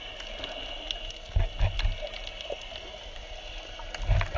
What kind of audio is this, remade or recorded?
recorded